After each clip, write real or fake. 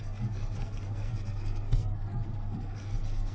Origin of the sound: fake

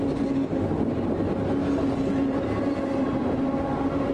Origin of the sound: real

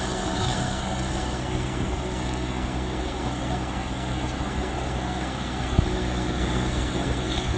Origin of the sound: fake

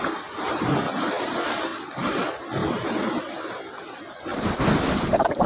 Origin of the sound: real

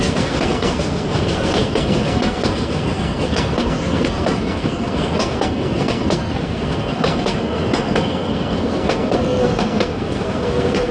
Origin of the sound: fake